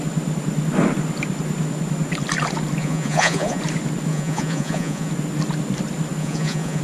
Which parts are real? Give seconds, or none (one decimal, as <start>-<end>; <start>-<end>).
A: 0.0-2.8; 3.6-4.1; 5.1-6.2